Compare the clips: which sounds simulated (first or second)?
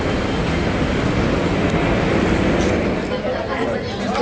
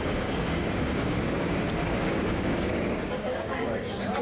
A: second